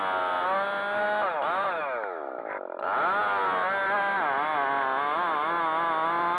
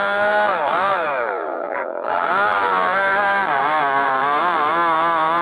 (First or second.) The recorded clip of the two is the first